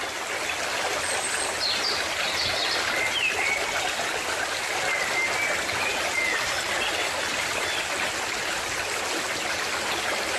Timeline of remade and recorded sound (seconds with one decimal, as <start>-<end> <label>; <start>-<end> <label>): 0.0-7.3 recorded; 7.3-7.9 remade; 7.9-10.4 recorded